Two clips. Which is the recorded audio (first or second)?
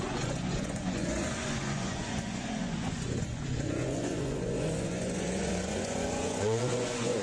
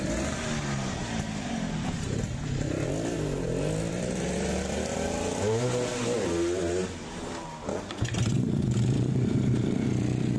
second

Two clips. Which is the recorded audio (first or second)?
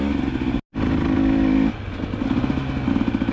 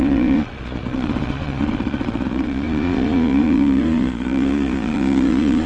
first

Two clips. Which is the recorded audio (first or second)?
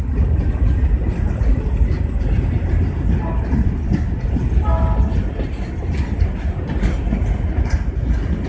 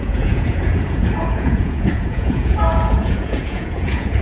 first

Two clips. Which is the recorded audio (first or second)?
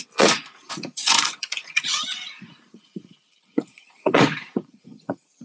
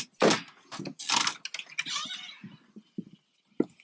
second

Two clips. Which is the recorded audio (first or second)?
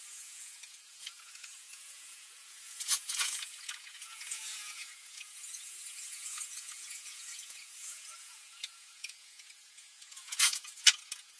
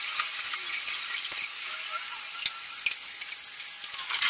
second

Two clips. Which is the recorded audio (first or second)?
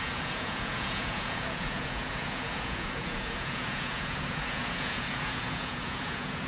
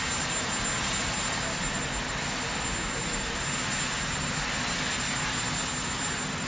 second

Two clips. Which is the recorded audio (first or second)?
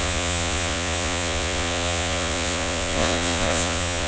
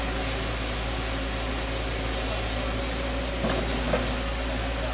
second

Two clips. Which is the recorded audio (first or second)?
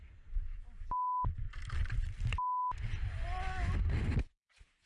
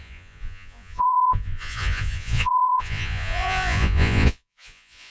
first